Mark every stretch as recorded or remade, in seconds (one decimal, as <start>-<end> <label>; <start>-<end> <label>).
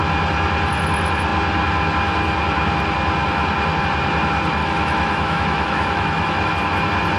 0.0-4.6 recorded; 4.6-6.5 remade; 6.5-7.2 recorded